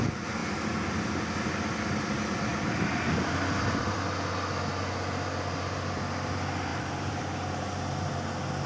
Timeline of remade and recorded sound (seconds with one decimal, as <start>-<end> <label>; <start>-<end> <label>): 0.0-2.5 recorded; 2.5-4.0 remade; 4.0-6.7 recorded; 6.7-7.2 remade; 7.2-8.7 recorded